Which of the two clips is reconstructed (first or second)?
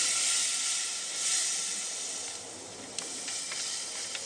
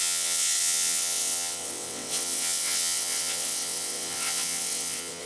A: second